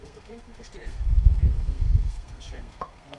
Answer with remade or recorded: remade